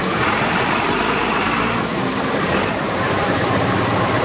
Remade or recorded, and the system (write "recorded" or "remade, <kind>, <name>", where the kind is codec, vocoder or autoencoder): remade, vocoder, BigVGAN v2